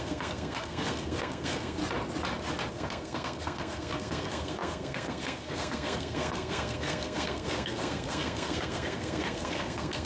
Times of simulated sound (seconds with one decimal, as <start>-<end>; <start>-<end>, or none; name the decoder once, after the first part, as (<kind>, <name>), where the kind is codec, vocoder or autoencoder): 0.0-1.8 (codec, SNAC); 2.7-10.1

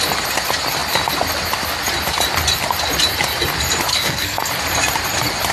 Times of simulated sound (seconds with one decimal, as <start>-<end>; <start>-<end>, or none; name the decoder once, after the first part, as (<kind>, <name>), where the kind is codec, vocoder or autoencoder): 3.9-4.5 (codec, SNAC)